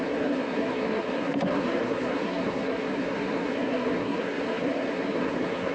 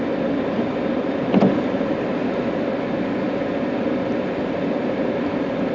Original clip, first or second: second